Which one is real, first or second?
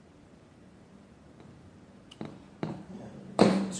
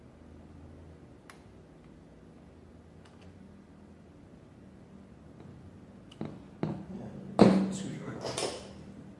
second